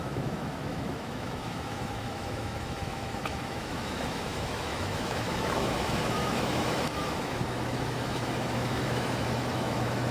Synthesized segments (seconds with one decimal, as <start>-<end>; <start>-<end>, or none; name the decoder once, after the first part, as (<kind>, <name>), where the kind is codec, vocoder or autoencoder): 0.0-10.1 (autoencoder, DAC-VAE)